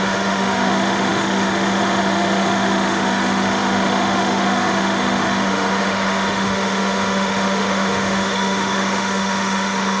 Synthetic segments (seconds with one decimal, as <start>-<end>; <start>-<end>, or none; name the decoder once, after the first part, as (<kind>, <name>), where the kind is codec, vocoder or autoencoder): 0.0-10.0 (autoencoder, DAC-VAE)